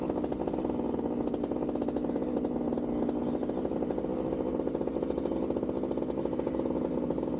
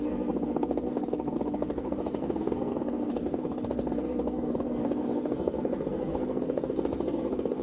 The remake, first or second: second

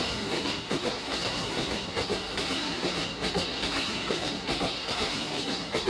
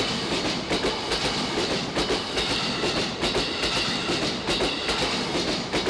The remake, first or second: first